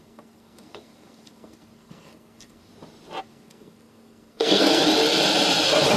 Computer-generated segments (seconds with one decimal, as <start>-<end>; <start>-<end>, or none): 0.0-2.7; 3.2-4.8